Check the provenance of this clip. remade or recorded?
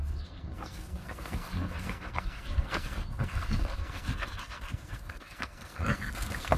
remade